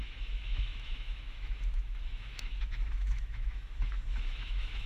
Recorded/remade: remade